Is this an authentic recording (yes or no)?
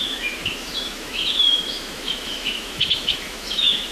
no